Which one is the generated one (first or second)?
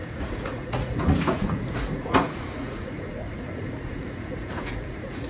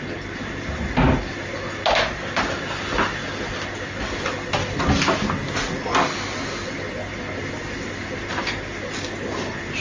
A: first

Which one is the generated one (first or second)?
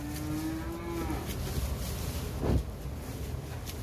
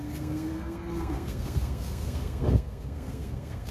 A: second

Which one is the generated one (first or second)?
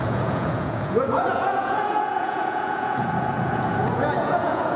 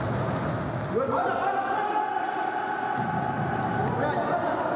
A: first